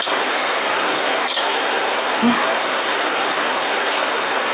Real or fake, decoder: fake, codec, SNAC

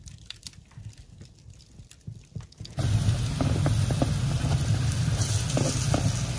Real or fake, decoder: real